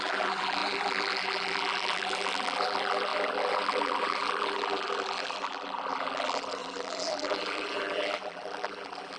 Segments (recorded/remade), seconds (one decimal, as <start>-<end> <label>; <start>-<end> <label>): 0.0-9.2 remade